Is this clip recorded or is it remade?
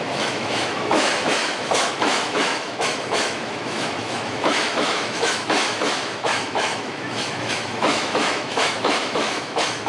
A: remade